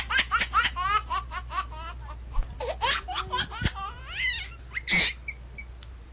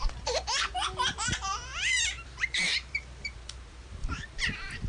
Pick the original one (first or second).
first